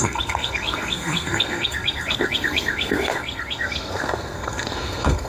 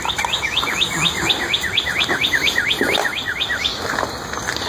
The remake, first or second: first